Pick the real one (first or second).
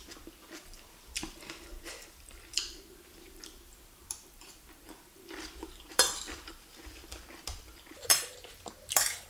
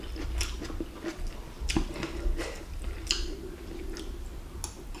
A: second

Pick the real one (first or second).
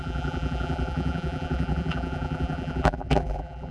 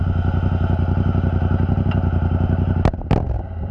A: second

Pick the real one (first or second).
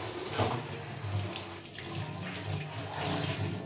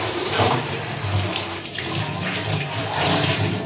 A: first